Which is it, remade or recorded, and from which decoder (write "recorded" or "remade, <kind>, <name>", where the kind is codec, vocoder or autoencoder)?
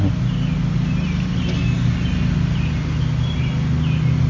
recorded